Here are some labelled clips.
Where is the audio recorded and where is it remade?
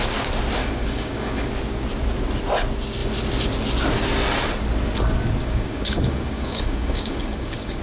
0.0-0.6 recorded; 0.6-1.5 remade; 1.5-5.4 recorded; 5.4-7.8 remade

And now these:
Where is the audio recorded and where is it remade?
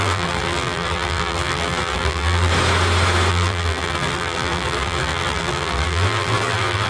0.0-2.5 remade; 2.5-3.3 recorded; 3.3-6.9 remade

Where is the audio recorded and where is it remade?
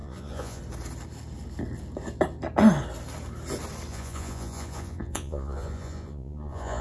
0.0-0.6 remade; 0.6-3.9 recorded; 3.9-6.8 remade